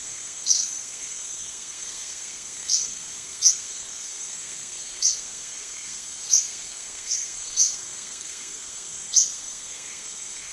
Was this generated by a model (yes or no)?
yes